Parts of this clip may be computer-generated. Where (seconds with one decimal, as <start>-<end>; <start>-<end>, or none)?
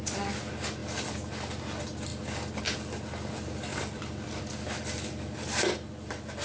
2.1-2.6; 3.7-4.4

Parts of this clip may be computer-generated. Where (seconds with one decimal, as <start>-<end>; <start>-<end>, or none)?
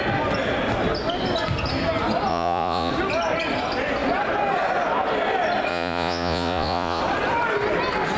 2.3-2.9; 5.7-7.0